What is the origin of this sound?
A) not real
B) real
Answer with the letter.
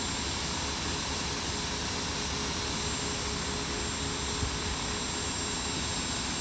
B